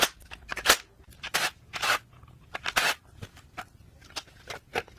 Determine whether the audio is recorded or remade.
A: recorded